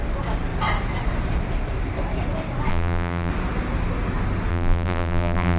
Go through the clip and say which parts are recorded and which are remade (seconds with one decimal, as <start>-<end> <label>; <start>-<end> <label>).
0.0-2.7 recorded; 2.7-3.3 remade; 3.3-4.5 recorded; 4.5-5.6 remade